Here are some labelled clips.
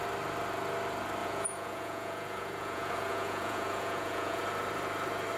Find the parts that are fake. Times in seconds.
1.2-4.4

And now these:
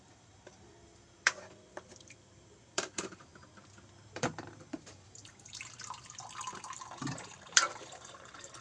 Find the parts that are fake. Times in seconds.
0.0-3.3; 4.1-8.6

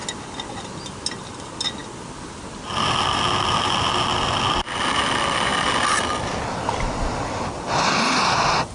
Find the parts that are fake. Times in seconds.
none

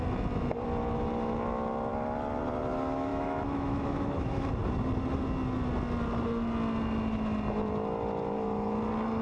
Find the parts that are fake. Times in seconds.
3.1-4.5